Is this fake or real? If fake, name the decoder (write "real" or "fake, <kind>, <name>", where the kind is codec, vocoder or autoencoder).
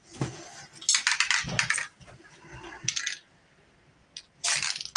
real